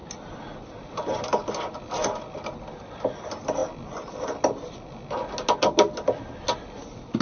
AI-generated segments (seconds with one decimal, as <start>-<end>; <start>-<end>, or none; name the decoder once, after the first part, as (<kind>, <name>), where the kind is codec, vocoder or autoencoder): 0.0-1.2 (vocoder, BigVGAN v2)